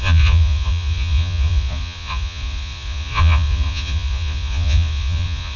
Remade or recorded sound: remade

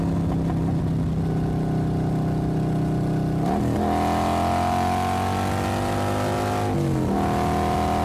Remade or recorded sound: recorded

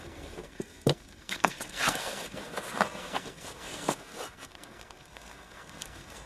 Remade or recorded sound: remade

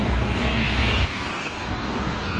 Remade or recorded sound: remade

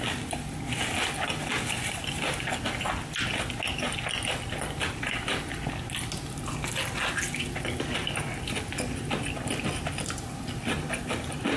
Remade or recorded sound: recorded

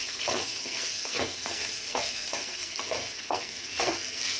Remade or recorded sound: remade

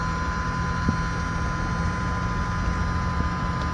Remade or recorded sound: recorded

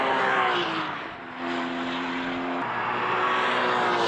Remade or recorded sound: recorded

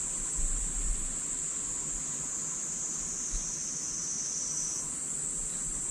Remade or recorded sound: recorded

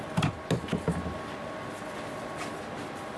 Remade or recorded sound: recorded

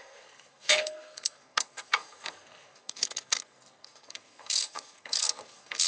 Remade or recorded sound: remade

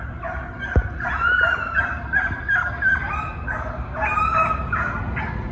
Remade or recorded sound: recorded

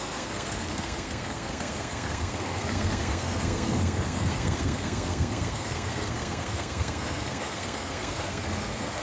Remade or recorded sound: remade